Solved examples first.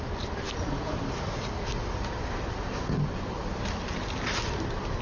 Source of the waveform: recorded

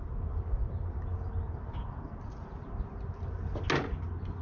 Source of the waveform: recorded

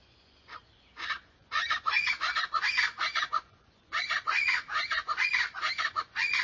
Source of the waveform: remade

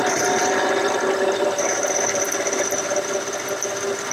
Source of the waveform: recorded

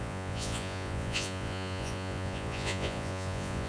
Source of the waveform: remade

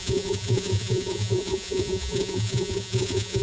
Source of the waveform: remade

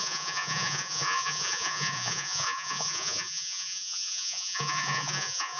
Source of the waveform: remade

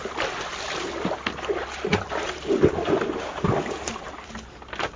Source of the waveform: recorded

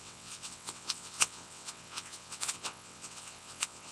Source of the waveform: remade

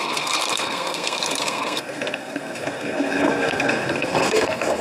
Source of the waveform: remade